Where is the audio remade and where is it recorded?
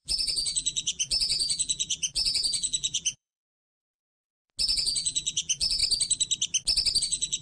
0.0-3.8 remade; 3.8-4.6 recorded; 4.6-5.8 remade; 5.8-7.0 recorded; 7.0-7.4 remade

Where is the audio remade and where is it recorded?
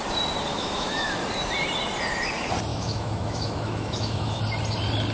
0.0-0.5 recorded; 0.5-1.1 remade; 1.1-2.7 recorded; 2.7-4.4 remade; 4.4-5.1 recorded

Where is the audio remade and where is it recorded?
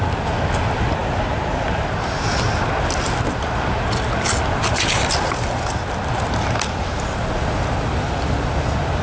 0.0-9.0 recorded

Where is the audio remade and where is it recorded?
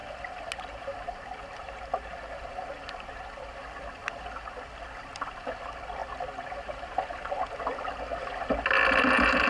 0.0-9.5 recorded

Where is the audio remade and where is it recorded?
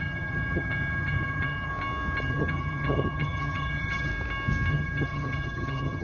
0.0-1.7 remade; 1.7-2.2 recorded; 2.2-4.1 remade; 4.1-4.7 recorded; 4.7-6.0 remade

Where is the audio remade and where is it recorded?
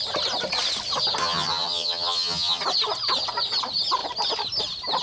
0.0-1.2 recorded; 1.2-2.6 remade; 2.6-5.0 recorded